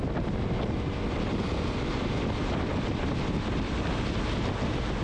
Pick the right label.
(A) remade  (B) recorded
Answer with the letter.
B